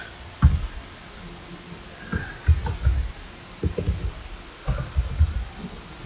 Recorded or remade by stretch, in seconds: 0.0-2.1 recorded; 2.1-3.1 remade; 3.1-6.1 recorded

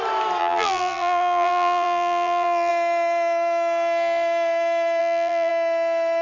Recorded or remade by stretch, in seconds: 0.0-0.4 recorded; 0.4-2.7 remade; 2.7-5.0 recorded; 5.0-5.5 remade; 5.5-6.2 recorded

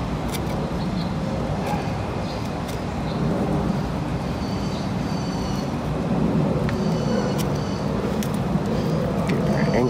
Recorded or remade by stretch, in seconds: 0.0-4.1 recorded; 4.1-6.1 remade; 6.1-9.9 recorded

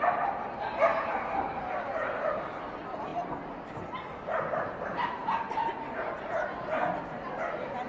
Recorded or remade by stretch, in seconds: 0.0-5.2 recorded; 5.2-6.4 remade; 6.4-7.9 recorded

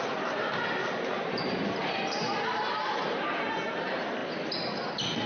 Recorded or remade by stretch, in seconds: 0.0-0.8 recorded; 0.8-3.4 remade; 3.4-5.3 recorded